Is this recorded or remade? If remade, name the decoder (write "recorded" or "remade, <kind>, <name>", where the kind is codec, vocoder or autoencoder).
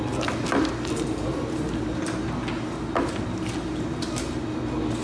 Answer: recorded